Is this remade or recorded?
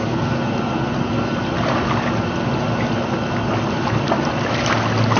recorded